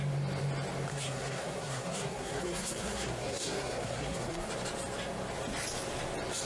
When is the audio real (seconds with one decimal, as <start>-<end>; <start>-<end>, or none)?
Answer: 0.0-0.9; 4.5-6.5